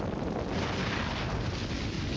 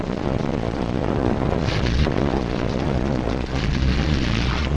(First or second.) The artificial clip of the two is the second